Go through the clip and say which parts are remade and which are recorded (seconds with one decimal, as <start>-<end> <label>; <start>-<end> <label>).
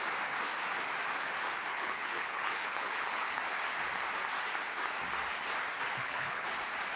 0.0-1.7 recorded; 1.7-3.4 remade; 3.4-5.9 recorded; 5.9-6.5 remade; 6.5-7.0 recorded